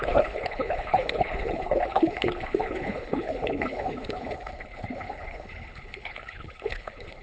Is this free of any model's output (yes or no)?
no